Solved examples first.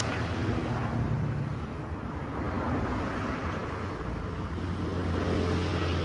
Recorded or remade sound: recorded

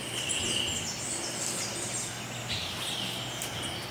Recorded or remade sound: recorded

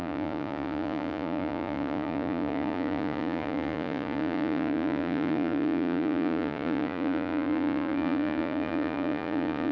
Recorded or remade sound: remade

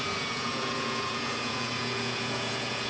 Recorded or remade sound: remade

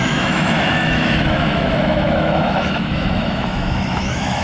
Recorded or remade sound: remade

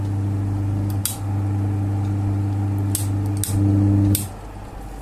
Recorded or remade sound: recorded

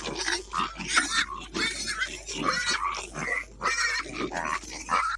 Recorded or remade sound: recorded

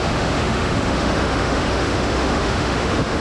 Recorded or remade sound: remade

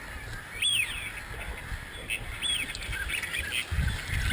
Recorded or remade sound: recorded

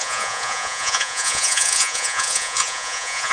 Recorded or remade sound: remade